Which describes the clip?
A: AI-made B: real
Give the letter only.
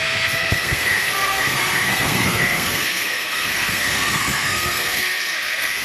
A